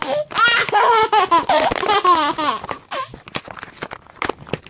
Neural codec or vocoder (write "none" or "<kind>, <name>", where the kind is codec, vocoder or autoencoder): none